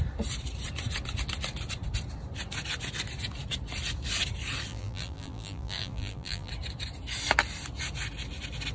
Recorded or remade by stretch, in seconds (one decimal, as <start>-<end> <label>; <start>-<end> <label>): 0.0-4.7 recorded; 4.7-6.5 remade; 6.5-8.7 recorded